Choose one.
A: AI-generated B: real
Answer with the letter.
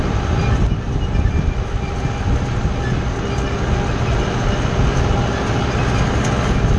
B